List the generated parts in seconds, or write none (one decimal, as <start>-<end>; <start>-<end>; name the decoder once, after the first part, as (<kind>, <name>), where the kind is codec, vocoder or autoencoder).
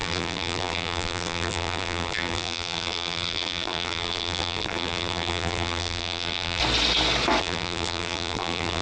0.0-6.6 (vocoder, BigVGAN v2); 7.4-8.8